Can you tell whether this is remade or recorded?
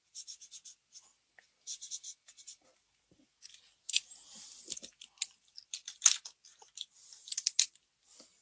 recorded